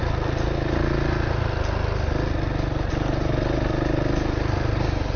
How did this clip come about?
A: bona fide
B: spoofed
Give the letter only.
A